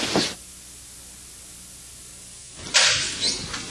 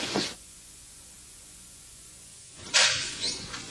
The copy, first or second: second